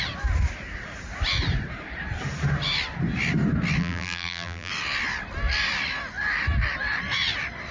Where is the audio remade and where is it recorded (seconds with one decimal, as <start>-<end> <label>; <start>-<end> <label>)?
0.0-3.8 recorded; 3.8-4.7 remade; 4.7-7.7 recorded